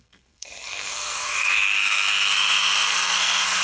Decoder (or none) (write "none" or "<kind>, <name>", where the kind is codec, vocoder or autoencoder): codec, SNAC